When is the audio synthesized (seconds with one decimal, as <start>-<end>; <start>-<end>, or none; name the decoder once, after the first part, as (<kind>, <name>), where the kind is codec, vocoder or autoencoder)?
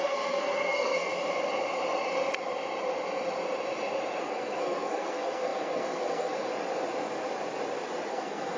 0.0-1.1 (codec, SNAC); 4.2-6.5; 8.1-8.6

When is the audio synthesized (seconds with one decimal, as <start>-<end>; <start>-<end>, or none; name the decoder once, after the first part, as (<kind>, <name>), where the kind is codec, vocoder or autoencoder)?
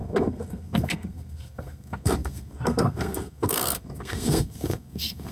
0.0-5.3 (codec, SNAC)